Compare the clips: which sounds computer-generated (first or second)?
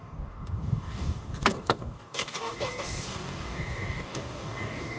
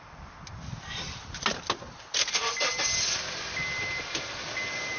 first